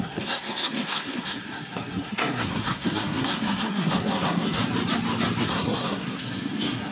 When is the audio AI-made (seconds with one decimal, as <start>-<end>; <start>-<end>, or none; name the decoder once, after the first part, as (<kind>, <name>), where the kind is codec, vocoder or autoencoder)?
0.0-4.6 (codec, SNAC); 5.4-6.9